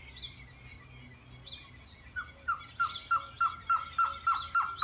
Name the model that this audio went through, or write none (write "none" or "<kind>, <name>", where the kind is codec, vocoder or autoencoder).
none